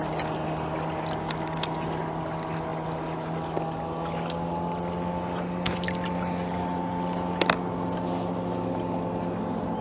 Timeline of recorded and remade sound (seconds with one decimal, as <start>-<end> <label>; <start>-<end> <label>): 0.0-9.8 recorded